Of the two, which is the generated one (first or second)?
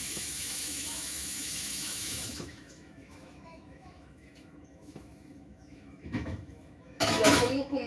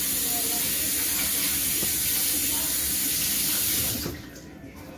first